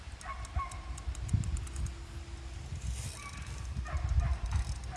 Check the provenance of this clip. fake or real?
real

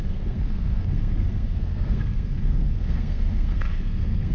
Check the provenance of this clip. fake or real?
fake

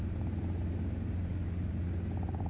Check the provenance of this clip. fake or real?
real